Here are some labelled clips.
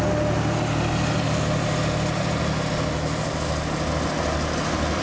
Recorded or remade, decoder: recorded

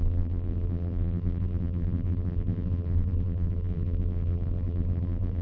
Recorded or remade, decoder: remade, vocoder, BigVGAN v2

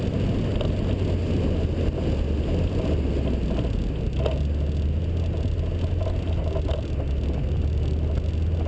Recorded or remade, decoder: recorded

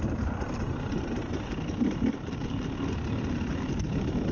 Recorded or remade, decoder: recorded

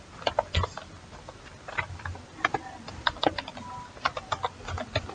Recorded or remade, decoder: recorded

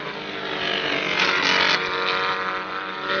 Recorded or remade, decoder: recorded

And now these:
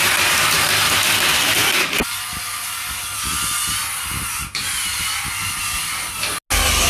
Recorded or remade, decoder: recorded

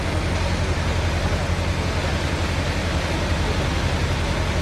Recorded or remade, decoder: recorded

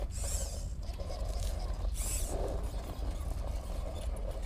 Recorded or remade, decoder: recorded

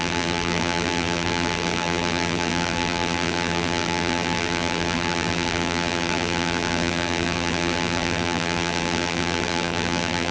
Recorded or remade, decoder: remade, vocoder, BigVGAN v2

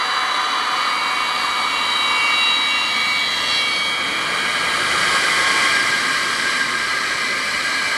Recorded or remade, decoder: recorded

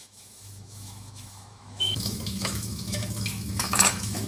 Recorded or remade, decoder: remade, autoencoder, DAC-VAE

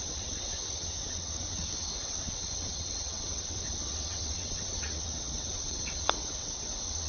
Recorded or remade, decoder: remade, vocoder, WaveNeXt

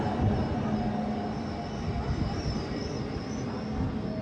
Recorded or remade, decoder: recorded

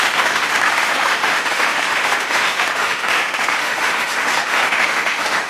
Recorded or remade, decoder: remade, autoencoder, DAC-VAE